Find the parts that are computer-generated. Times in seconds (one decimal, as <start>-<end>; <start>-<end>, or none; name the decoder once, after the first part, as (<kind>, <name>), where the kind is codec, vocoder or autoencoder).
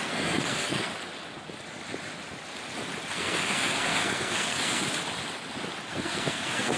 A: 0.0-0.9 (codec, SNAC); 3.1-4.8; 5.9-6.8